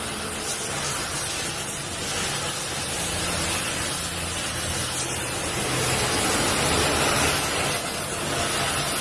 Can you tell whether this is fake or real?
real